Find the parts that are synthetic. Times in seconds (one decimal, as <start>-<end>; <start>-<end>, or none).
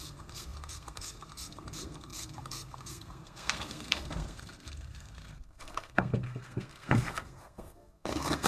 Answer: 0.0-8.5